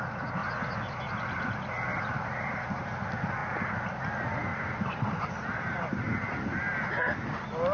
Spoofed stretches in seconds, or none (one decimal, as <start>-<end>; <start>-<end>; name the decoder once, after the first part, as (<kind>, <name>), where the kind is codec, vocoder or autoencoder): 4.5-6.0 (vocoder, BigVGAN v2)